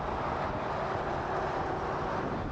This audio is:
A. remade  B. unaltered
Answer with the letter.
B